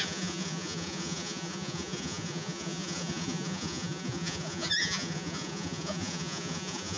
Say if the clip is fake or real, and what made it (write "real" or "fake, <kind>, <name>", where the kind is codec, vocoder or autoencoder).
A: fake, vocoder, Vocos